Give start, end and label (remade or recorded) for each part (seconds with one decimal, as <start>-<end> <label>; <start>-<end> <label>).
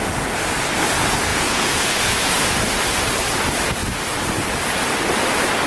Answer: 0.0-1.3 recorded; 1.3-2.3 remade; 2.3-5.7 recorded